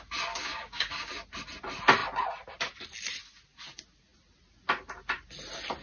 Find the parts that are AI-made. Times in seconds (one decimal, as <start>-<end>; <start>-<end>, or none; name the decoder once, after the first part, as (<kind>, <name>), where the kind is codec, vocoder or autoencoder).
0.4-1.1 (codec, DAC)